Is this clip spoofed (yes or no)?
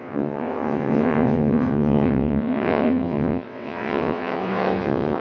yes